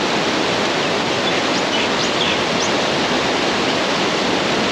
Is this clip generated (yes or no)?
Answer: no